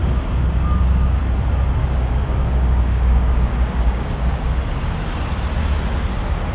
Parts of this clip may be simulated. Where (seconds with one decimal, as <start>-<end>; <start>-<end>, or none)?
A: 0.0-1.2; 1.8-4.4

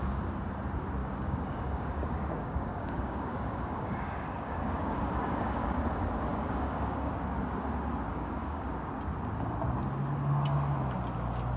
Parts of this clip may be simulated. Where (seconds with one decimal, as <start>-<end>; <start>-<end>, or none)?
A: 1.0-5.8; 6.3-7.1; 8.1-8.7